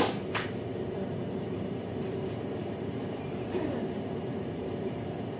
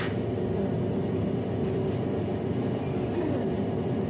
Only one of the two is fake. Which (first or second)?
first